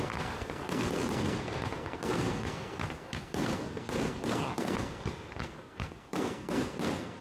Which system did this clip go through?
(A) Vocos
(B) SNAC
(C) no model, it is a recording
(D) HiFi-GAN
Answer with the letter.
B